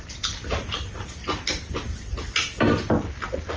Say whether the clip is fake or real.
real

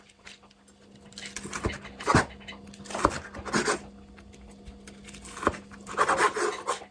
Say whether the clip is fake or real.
real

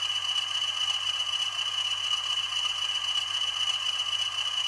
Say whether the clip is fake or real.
real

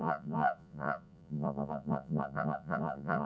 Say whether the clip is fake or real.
fake